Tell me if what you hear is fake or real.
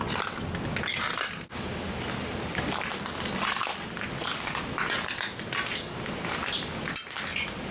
real